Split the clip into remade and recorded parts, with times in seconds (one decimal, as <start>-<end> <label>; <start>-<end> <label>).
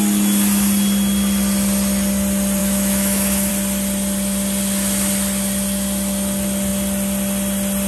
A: 0.0-2.6 recorded; 2.6-3.5 remade; 3.5-7.9 recorded